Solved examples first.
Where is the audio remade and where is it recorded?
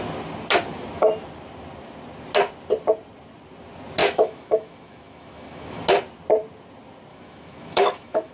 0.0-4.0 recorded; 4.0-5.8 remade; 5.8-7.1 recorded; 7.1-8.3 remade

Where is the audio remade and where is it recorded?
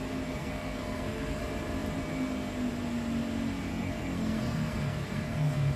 0.0-0.4 recorded; 0.4-1.4 remade; 1.4-3.7 recorded; 3.7-5.8 remade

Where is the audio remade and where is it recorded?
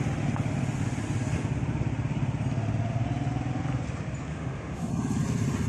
0.0-4.3 recorded; 4.3-4.9 remade; 4.9-5.7 recorded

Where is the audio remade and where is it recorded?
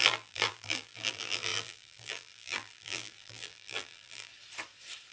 0.0-4.3 remade; 4.3-5.1 recorded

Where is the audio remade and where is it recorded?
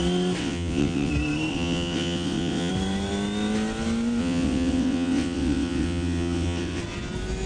0.0-0.4 recorded; 0.4-1.1 remade; 1.1-1.5 recorded; 1.5-2.7 remade; 2.7-4.2 recorded; 4.2-6.8 remade; 6.8-7.5 recorded